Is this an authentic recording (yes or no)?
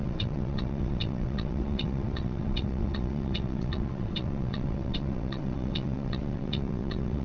no